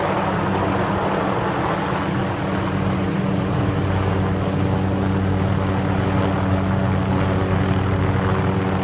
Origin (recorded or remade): recorded